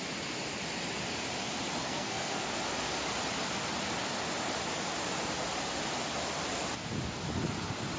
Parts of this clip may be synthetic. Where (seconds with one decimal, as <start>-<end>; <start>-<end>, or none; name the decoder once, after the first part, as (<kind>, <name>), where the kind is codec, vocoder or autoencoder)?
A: 1.8-2.4 (codec, SNAC)